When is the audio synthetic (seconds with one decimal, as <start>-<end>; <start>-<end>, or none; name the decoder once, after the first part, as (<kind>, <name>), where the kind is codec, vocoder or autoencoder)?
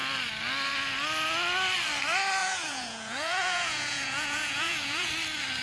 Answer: 2.4-5.1 (vocoder, Vocos)